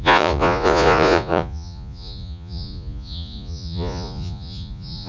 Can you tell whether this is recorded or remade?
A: remade